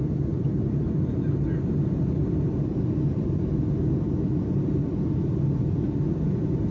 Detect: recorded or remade recorded